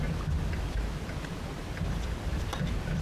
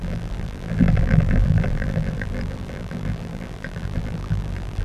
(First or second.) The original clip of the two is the first